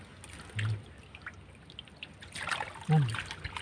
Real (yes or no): yes